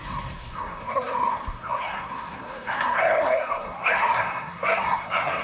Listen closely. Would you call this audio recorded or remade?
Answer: remade